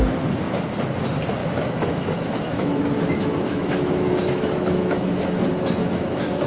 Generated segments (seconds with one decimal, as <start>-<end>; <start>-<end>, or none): 1.4-5.3; 5.8-6.5